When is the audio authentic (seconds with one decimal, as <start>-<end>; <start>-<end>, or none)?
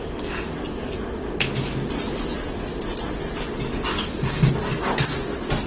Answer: 0.0-3.9; 4.5-5.7